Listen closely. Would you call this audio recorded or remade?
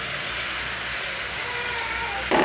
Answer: recorded